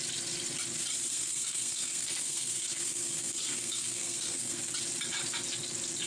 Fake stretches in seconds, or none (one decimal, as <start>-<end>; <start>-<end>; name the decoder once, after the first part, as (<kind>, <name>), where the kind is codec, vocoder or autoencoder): 1.1-4.6 (codec, SNAC)